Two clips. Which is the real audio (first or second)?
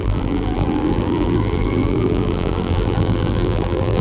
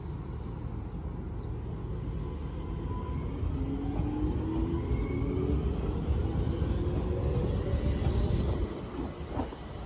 second